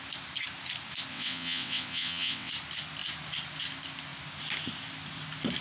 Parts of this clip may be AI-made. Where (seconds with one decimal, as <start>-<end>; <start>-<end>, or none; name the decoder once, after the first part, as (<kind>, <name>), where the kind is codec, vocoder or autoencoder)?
1.1-2.5 (vocoder, WaveNeXt)